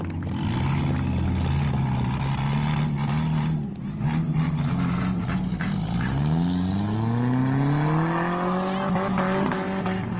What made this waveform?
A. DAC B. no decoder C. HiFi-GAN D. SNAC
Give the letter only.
B